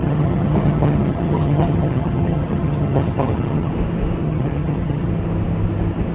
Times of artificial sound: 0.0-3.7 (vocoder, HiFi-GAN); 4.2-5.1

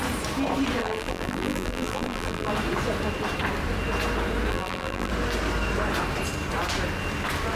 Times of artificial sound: 0.8-2.5 (vocoder, BigVGAN v2); 4.5-5.1

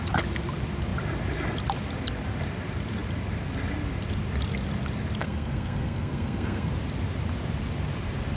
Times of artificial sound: 5.2-6.7 (codec, SNAC)

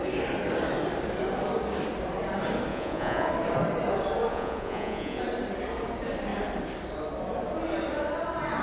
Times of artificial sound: 2.7-3.3 (vocoder, Vocos); 4.3-5.2

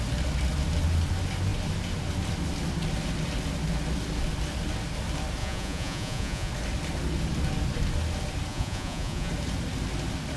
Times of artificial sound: 5.4-6.5 (vocoder, Vocos); 8.5-9.3

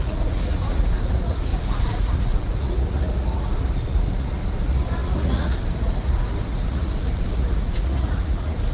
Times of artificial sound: 0.0-8.7 (vocoder, Vocos)